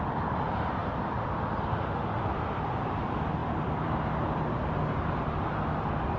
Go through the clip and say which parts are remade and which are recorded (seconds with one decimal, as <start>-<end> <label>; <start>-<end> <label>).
0.0-3.4 recorded; 3.4-5.8 remade; 5.8-6.2 recorded